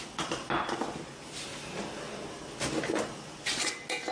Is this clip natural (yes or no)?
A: yes